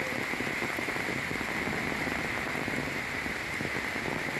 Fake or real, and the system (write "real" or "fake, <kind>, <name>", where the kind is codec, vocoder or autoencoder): real